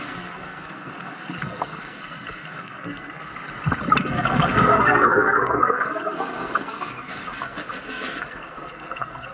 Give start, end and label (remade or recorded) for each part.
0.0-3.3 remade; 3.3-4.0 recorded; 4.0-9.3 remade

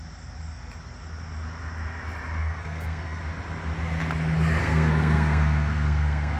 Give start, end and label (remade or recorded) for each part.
0.0-2.4 recorded; 2.4-3.2 remade; 3.2-4.6 recorded; 4.6-6.4 remade

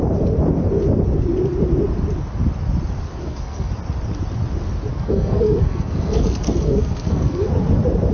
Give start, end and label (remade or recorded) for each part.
0.0-3.2 recorded; 3.2-3.7 remade; 3.7-4.9 recorded; 4.9-7.5 remade; 7.5-8.1 recorded

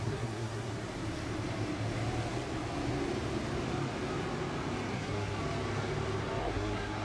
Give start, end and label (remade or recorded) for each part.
0.0-0.7 remade; 0.7-4.9 recorded; 4.9-5.4 remade; 5.4-6.4 recorded; 6.4-7.0 remade

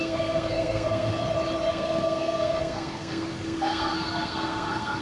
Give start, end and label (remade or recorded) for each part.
0.0-1.1 remade; 1.1-1.7 recorded; 1.7-5.0 remade

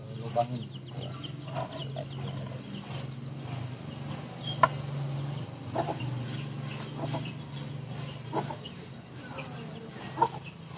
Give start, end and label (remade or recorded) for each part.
0.0-10.8 recorded